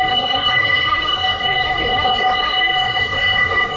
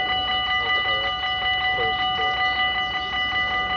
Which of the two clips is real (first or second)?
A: second